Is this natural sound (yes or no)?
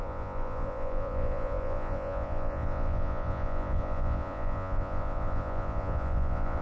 no